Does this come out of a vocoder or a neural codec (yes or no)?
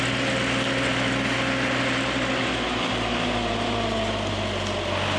no